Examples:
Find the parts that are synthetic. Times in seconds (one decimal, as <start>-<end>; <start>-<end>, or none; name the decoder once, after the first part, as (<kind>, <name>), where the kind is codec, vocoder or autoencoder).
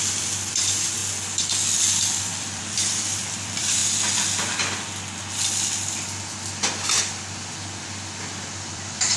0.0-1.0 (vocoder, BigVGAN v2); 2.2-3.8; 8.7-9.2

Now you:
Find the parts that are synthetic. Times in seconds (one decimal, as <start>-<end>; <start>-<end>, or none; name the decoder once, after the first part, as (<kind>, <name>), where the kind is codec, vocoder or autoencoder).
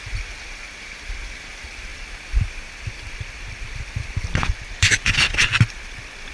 0.0-6.3 (vocoder, BigVGAN v2)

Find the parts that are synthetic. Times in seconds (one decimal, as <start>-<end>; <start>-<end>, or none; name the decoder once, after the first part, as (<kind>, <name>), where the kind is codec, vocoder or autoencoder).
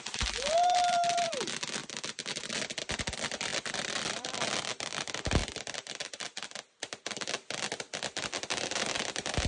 0.6-1.3 (vocoder, BigVGAN v2); 1.8-2.6; 3.5-4.5